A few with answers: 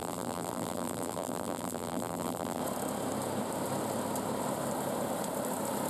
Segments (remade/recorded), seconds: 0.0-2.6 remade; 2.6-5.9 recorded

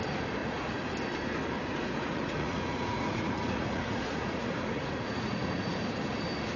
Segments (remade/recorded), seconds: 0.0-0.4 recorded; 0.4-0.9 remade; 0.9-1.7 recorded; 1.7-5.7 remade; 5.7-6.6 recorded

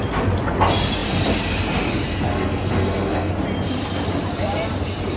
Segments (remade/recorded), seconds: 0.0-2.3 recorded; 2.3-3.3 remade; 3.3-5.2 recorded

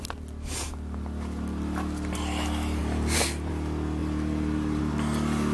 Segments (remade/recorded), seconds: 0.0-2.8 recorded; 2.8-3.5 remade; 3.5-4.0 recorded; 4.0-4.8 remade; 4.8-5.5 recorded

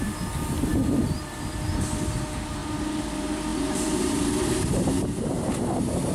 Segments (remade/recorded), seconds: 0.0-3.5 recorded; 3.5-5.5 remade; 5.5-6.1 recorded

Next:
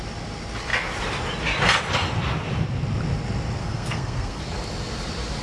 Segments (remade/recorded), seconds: 0.0-3.6 recorded; 3.6-4.4 remade; 4.4-5.4 recorded

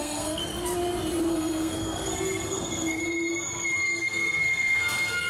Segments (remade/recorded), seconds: 0.0-0.4 remade; 0.4-1.3 recorded; 1.3-3.0 remade; 3.0-4.0 recorded; 4.0-5.3 remade